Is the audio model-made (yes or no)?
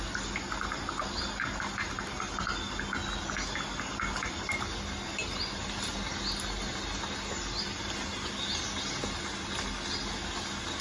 no